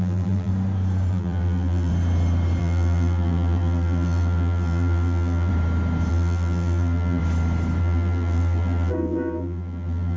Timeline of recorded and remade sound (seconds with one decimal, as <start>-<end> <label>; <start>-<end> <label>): 0.0-0.5 remade; 0.5-1.1 recorded; 1.1-1.9 remade; 1.9-2.6 recorded; 2.6-5.5 remade; 5.5-6.1 recorded; 6.1-7.2 remade; 7.2-7.8 recorded; 7.8-10.2 remade